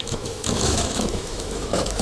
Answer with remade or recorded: remade